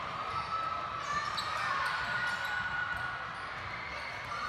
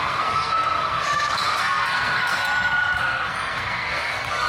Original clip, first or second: first